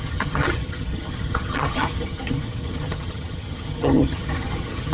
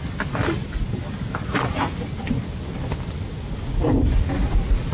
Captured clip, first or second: second